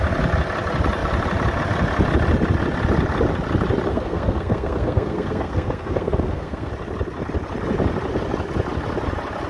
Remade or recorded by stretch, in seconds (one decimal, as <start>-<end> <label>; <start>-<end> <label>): 0.0-3.9 recorded; 3.9-6.7 remade; 6.7-9.5 recorded